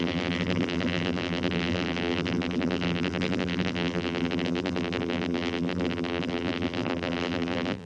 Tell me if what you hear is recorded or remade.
remade